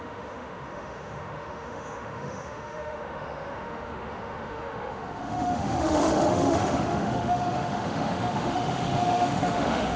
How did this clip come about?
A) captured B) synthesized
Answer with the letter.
B